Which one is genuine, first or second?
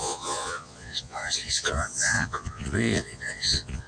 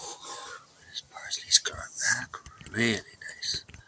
second